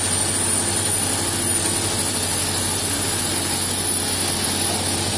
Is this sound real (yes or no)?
yes